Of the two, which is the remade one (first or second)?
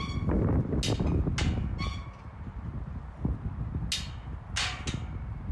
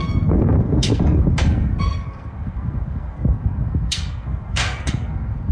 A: second